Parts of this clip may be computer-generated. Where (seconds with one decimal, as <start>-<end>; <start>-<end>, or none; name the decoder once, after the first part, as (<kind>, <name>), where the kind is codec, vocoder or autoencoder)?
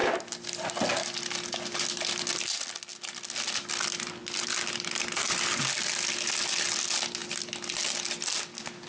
none